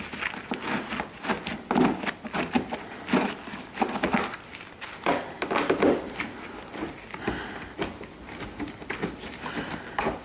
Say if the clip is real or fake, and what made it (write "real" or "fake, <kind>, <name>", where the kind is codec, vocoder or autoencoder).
real